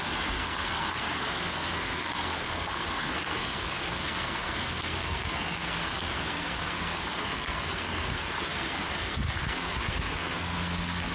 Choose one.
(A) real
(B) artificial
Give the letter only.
B